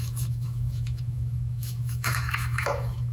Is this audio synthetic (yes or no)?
yes